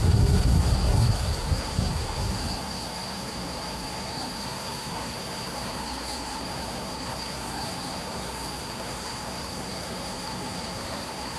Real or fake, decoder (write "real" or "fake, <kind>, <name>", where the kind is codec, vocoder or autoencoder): fake, codec, SNAC